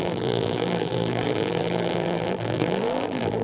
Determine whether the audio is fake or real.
fake